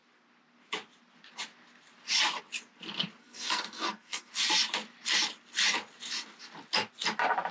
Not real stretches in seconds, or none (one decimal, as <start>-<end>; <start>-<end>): 3.2-4.3